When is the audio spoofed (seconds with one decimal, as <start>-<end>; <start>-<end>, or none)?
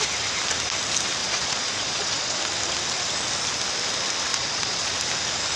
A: 1.2-2.4; 4.3-4.9